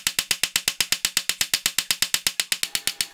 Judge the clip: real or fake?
real